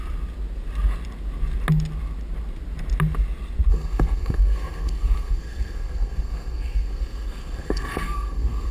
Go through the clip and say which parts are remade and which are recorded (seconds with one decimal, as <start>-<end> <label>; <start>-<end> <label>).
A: 0.0-3.7 recorded; 3.7-8.7 remade